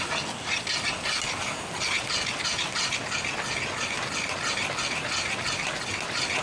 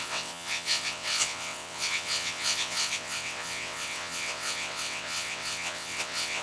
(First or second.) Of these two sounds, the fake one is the second